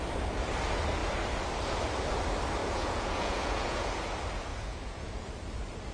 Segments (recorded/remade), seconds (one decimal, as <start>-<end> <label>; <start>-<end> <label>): 0.0-2.6 recorded; 2.6-3.9 remade; 3.9-4.5 recorded; 4.5-5.3 remade; 5.3-5.9 recorded